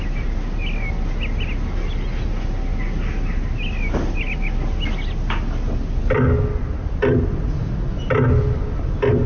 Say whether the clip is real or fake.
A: real